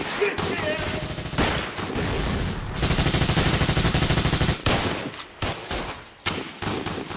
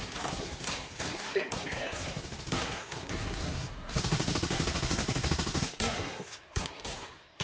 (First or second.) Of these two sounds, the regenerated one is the second